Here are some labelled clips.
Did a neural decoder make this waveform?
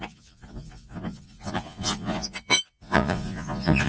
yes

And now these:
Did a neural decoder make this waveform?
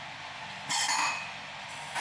no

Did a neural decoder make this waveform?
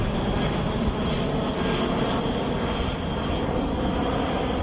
no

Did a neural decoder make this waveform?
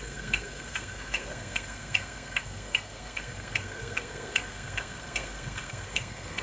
yes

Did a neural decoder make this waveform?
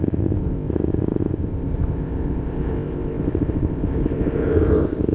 yes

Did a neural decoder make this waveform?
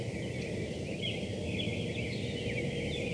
no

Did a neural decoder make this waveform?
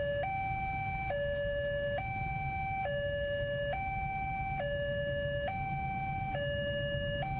no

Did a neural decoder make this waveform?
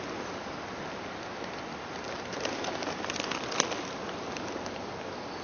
no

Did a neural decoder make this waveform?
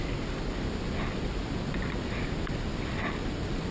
no